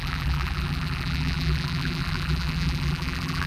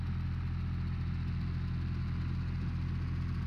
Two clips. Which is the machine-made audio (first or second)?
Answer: first